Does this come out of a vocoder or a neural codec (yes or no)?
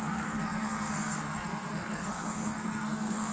yes